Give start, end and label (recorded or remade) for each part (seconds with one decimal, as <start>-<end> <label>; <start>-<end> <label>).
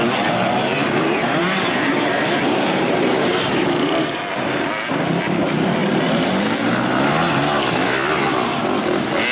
0.0-0.4 recorded; 0.4-4.2 remade; 4.2-5.8 recorded; 5.8-6.4 remade; 6.4-9.3 recorded